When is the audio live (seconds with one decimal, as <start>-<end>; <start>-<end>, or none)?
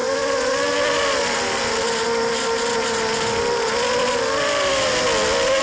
0.0-5.6